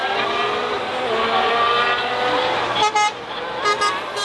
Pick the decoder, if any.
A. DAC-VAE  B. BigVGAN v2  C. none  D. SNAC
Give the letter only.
C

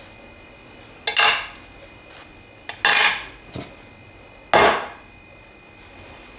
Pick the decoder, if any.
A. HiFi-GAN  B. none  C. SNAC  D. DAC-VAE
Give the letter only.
B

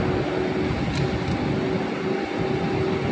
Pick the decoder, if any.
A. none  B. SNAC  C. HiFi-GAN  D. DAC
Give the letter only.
A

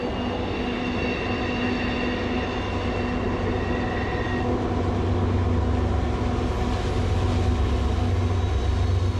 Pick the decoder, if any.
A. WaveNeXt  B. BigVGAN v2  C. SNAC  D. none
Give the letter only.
D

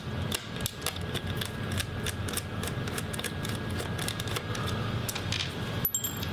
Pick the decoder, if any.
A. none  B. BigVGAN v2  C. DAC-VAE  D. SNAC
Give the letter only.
A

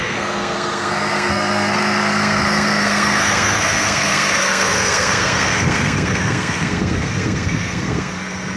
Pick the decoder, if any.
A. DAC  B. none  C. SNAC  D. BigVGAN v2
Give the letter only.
C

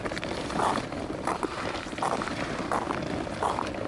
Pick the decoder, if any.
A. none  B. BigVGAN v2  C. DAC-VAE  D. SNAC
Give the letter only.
A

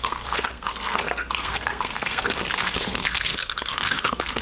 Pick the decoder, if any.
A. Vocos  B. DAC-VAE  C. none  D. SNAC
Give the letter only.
D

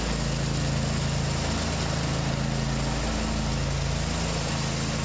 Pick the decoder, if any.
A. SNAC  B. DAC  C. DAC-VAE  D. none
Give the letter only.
D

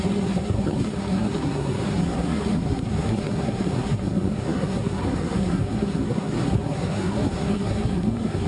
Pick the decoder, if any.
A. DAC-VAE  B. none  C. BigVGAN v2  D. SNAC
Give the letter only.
D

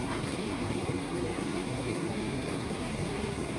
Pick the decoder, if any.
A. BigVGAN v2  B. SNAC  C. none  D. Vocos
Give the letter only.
B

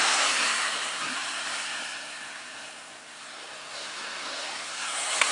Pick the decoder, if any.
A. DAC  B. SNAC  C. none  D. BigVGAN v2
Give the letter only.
B